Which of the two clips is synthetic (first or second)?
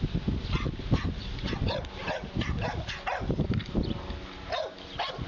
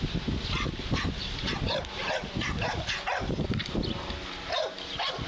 second